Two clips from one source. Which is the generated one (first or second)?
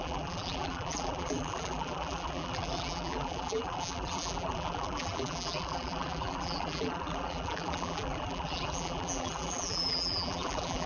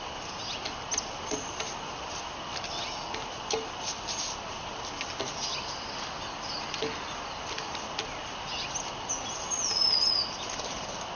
first